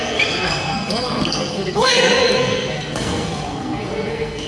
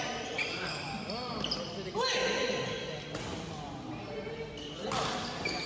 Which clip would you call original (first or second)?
second